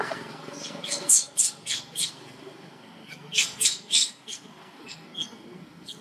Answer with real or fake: fake